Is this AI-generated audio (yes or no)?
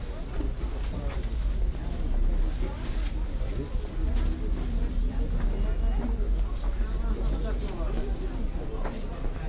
no